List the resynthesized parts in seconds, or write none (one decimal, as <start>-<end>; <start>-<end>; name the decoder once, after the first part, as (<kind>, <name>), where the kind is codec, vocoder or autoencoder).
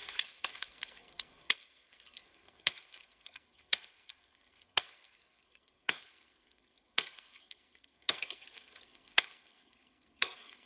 0.0-10.7 (codec, SNAC)